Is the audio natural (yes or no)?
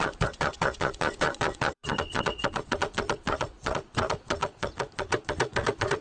no